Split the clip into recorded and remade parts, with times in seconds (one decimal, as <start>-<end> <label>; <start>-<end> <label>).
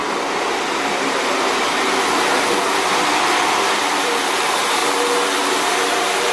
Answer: 0.0-3.8 recorded; 3.8-6.3 remade